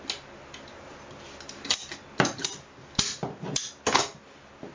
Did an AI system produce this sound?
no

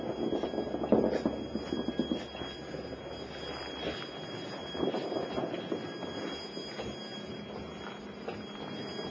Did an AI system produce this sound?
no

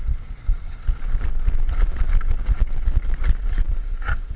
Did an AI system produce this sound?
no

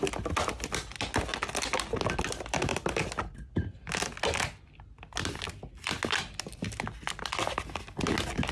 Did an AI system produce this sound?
no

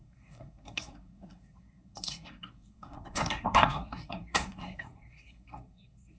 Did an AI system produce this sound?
yes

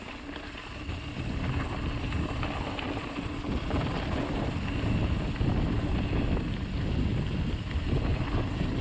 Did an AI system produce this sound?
no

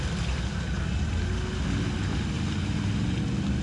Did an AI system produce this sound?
no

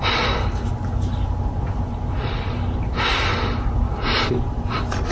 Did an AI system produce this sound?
no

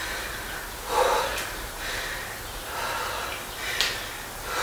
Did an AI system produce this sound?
no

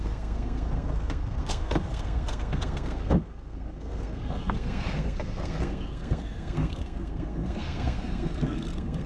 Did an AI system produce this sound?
yes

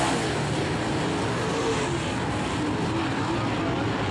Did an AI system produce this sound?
no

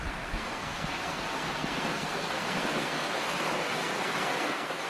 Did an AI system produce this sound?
yes